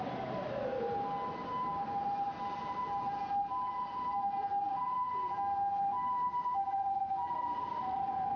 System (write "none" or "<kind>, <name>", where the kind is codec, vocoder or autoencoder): none